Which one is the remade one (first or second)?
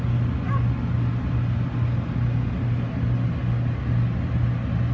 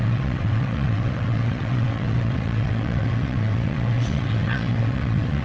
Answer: second